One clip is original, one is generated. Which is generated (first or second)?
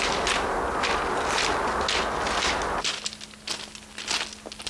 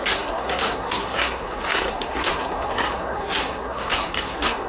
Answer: second